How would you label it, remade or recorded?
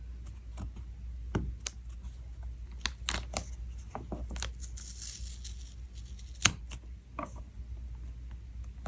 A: recorded